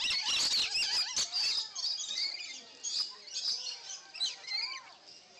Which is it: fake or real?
real